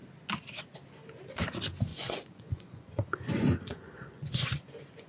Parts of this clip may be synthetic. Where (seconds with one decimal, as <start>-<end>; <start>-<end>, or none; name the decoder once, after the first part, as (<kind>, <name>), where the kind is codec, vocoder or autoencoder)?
1.9-5.1 (vocoder, Vocos)